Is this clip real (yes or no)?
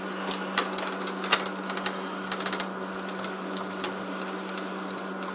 yes